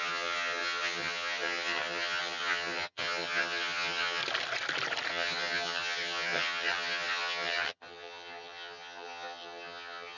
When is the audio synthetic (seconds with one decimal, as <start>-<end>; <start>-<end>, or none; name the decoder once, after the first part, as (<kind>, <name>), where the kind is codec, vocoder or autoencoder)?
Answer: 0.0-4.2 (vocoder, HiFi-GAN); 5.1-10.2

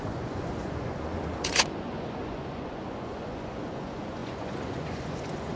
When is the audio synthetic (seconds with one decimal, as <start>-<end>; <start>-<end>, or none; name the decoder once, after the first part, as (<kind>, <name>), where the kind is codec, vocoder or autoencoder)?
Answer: 0.0-5.6 (vocoder, Vocos)

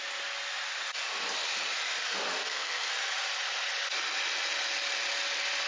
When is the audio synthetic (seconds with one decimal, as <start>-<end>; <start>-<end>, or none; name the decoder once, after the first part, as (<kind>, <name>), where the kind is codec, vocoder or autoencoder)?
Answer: 2.4-2.9 (codec, SNAC)